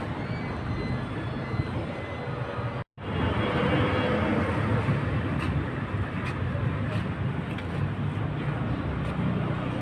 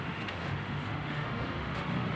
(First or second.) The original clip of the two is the first